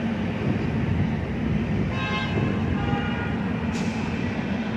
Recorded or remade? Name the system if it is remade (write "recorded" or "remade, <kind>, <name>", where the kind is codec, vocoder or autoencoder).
recorded